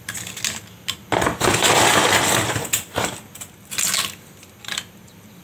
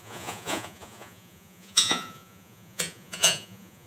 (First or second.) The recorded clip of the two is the first